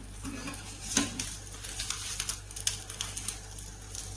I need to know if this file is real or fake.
real